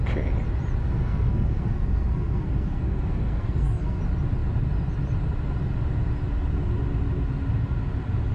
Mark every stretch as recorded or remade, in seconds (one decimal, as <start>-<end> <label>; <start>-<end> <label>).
0.0-0.8 recorded; 0.8-4.0 remade; 4.0-8.3 recorded